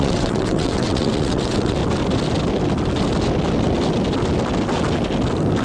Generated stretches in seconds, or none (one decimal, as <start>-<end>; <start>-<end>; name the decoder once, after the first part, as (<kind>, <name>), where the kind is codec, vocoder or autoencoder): 0.0-1.8 (vocoder, WaveNeXt)